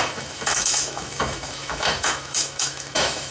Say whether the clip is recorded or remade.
remade